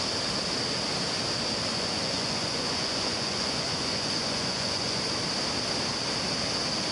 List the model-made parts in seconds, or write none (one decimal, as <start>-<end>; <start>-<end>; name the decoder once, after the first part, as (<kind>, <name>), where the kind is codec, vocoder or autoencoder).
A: 1.7-5.0 (vocoder, Vocos)